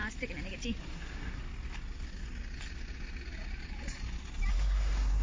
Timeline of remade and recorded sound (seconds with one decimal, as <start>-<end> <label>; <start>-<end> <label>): 0.0-0.8 recorded; 0.8-1.4 remade; 1.4-4.5 recorded; 4.5-5.2 remade